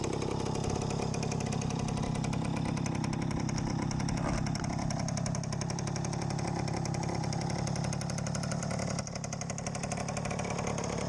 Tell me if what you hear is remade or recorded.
recorded